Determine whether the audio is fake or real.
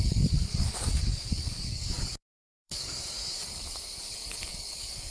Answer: fake